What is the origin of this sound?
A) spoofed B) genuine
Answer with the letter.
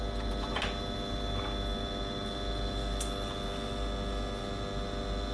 B